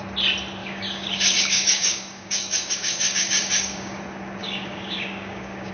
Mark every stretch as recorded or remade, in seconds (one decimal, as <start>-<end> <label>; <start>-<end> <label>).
0.0-0.6 recorded; 0.6-4.0 remade; 4.0-4.4 recorded; 4.4-5.7 remade